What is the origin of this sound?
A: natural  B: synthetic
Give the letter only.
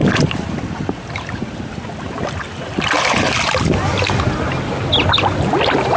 A